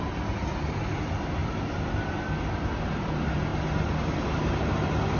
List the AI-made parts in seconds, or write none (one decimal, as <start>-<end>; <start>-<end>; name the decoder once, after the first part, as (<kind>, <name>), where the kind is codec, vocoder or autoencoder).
none